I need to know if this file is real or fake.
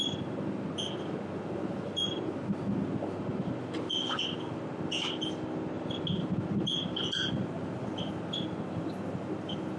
real